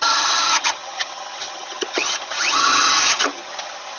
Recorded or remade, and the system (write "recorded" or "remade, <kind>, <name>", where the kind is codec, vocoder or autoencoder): remade, vocoder, HiFi-GAN